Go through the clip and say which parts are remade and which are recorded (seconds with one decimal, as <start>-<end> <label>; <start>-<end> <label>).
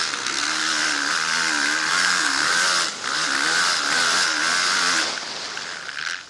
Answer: 0.0-0.6 remade; 0.6-1.9 recorded; 1.9-2.5 remade; 2.5-6.3 recorded